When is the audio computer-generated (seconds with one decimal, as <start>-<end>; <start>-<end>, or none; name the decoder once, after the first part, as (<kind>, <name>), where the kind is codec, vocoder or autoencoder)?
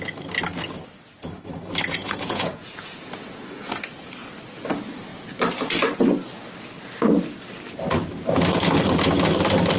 2.0-3.7 (vocoder, Vocos)